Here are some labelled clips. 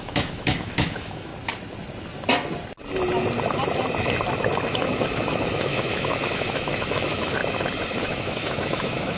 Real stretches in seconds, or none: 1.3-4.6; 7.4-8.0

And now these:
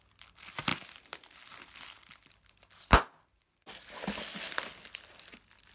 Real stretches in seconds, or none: 0.0-5.7

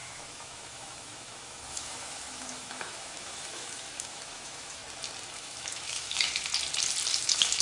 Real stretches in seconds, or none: 4.8-5.3; 6.5-7.1

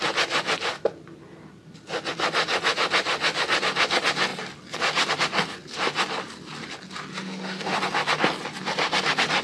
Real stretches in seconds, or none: 0.0-7.1; 7.8-9.4

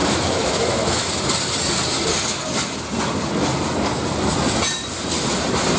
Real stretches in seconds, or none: 1.1-5.8

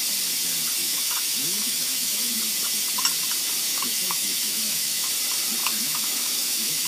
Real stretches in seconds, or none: 0.0-0.8; 2.4-3.7; 5.1-5.6

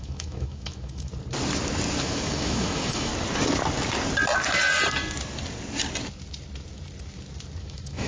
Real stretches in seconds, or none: 1.1-2.0; 3.1-7.6